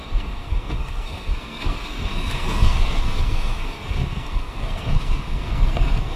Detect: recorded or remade remade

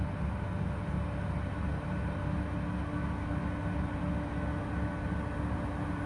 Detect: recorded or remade recorded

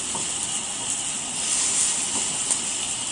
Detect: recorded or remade recorded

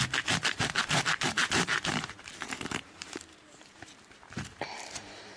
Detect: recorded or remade remade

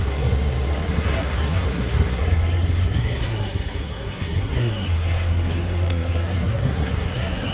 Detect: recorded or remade remade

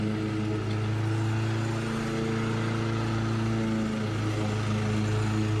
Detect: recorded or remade recorded